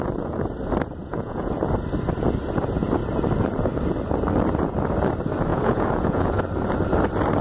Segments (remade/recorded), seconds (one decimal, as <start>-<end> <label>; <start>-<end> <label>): 0.0-1.0 recorded; 1.0-1.6 remade; 1.6-5.5 recorded; 5.5-6.4 remade; 6.4-7.4 recorded